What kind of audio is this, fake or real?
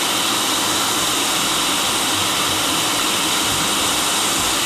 real